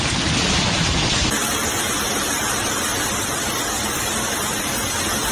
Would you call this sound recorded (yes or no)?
yes